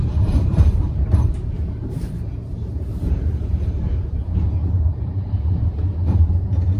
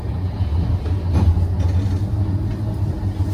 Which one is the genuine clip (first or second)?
second